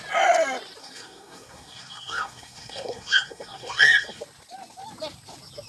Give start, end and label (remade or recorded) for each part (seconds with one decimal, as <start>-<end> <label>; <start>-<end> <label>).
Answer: 0.0-0.8 recorded; 0.8-4.2 remade; 4.2-5.7 recorded